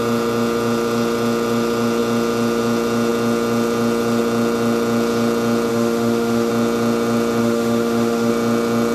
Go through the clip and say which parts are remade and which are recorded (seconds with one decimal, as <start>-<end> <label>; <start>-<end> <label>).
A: 0.0-5.7 recorded; 5.7-6.5 remade; 6.5-7.4 recorded; 7.4-8.3 remade; 8.3-8.9 recorded